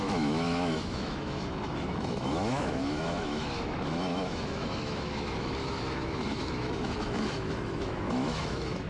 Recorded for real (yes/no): no